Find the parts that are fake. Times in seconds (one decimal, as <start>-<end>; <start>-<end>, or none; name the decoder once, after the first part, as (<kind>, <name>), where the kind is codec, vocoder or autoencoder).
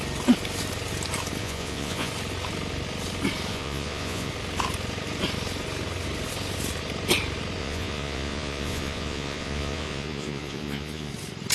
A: 1.4-2.1 (vocoder, Vocos); 3.5-4.3; 7.6-11.1